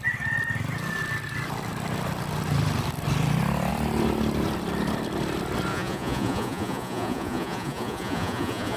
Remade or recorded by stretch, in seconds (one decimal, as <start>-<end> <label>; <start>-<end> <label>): 0.0-5.7 recorded; 5.7-8.8 remade